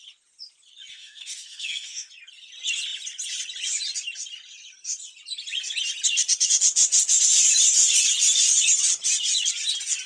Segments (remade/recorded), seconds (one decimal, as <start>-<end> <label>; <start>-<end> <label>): 0.0-0.9 recorded; 0.9-2.1 remade; 2.1-10.1 recorded